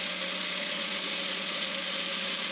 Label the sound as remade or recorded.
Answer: remade